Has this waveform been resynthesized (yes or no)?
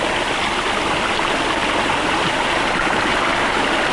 no